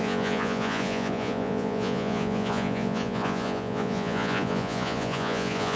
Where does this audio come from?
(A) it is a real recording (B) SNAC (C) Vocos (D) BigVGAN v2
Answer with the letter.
C